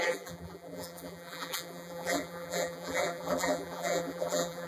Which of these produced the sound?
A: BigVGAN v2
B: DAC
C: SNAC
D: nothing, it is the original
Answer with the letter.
A